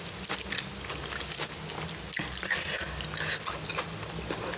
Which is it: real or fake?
real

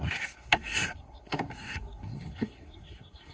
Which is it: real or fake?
fake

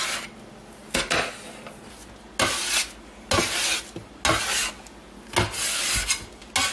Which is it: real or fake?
real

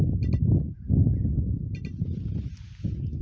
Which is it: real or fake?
real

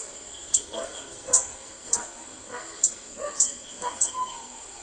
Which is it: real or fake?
fake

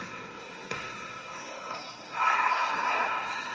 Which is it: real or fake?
fake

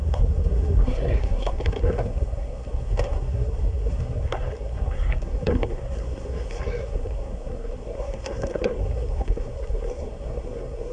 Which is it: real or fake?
fake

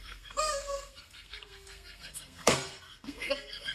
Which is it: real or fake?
fake